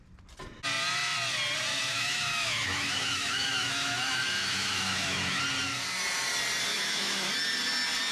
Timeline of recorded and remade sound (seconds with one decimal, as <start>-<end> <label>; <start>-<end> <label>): 0.0-1.7 recorded; 1.7-5.4 remade; 5.4-6.7 recorded; 6.7-7.3 remade; 7.3-8.1 recorded